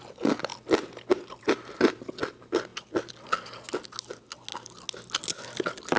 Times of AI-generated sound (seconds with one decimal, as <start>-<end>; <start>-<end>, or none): none